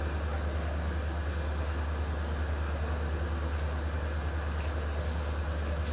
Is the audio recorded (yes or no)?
yes